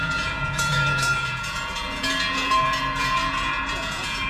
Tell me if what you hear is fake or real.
fake